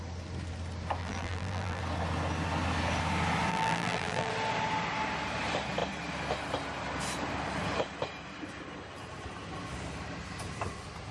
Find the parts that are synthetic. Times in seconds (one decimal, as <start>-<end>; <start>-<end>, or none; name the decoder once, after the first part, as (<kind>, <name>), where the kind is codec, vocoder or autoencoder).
1.0-1.8 (vocoder, BigVGAN v2); 3.5-4.3